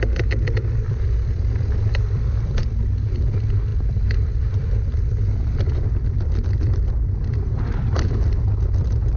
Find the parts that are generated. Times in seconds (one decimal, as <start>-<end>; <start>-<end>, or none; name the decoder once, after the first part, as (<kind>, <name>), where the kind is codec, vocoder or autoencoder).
0.0-2.6 (vocoder, BigVGAN v2); 3.1-9.2